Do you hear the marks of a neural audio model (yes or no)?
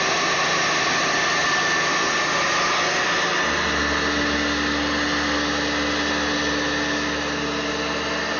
no